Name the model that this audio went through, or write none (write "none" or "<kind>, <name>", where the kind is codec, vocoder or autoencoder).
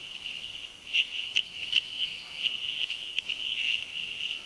codec, SNAC